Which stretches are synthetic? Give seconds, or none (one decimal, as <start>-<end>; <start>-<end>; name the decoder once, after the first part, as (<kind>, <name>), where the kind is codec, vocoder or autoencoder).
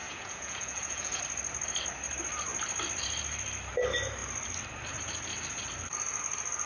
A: 0.0-1.2 (vocoder, Vocos)